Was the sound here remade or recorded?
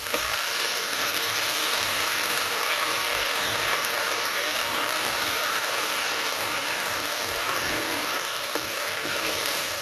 remade